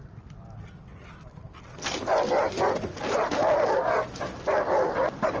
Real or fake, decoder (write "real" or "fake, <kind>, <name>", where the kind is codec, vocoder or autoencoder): real